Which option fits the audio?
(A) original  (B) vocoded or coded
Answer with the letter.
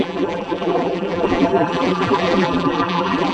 B